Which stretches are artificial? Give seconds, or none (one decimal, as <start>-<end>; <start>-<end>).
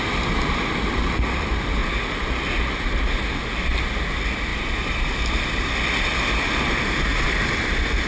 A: none